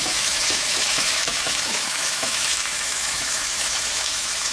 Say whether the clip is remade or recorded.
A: remade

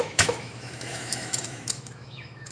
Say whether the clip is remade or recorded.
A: remade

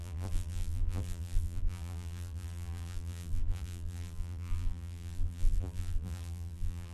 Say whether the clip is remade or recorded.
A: remade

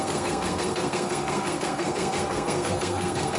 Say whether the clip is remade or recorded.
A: remade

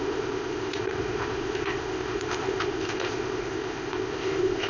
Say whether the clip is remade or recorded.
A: remade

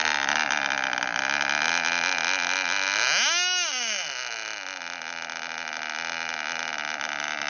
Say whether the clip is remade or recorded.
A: recorded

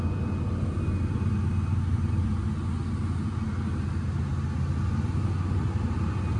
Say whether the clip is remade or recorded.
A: recorded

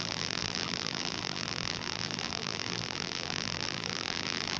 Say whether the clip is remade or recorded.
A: remade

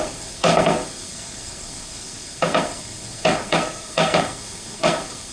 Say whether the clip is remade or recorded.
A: remade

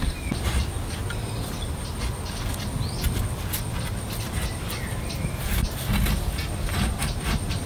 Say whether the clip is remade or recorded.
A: recorded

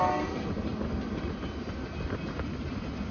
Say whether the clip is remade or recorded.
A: recorded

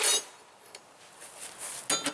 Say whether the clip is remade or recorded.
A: recorded